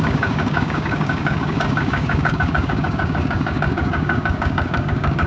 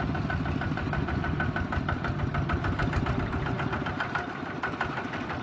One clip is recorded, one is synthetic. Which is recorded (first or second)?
second